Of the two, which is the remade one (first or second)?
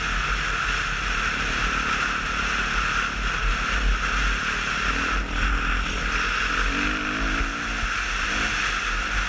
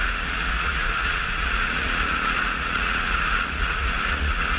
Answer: second